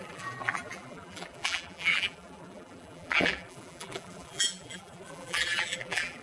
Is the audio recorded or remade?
remade